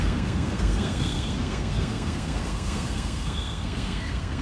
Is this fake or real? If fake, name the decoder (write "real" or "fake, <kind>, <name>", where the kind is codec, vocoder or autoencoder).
fake, codec, SNAC